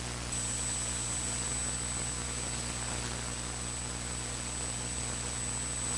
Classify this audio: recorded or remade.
recorded